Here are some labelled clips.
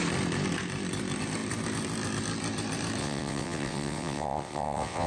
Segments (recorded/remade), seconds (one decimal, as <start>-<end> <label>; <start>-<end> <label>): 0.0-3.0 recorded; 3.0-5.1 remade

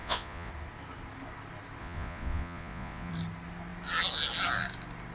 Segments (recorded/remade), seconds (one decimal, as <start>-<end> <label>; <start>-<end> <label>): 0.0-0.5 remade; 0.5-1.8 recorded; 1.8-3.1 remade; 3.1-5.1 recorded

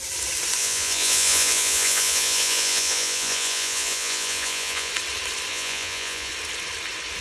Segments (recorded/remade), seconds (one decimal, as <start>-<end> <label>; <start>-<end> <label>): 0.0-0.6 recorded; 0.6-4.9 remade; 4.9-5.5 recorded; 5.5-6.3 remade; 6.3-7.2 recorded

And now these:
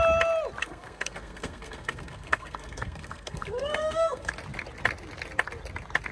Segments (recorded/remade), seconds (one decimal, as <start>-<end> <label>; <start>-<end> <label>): 0.0-0.6 recorded; 0.6-4.3 remade; 4.3-6.1 recorded

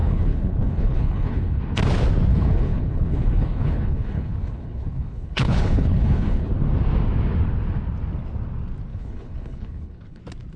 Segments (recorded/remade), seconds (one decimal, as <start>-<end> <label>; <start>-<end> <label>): 0.0-1.6 remade; 1.6-2.3 recorded; 2.3-6.5 remade; 6.5-8.9 recorded; 8.9-10.2 remade; 10.2-10.6 recorded

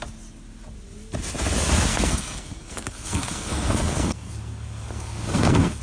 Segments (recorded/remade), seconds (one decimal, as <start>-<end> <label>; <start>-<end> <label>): 0.0-1.9 recorded; 1.9-5.8 remade